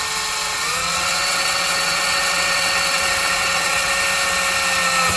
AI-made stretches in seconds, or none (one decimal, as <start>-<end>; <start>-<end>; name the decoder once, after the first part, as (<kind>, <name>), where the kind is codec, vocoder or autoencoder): 0.8-3.9 (vocoder, WaveNeXt)